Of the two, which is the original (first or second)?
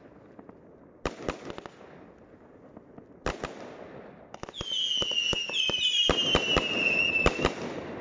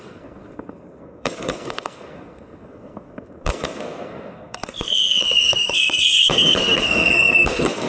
first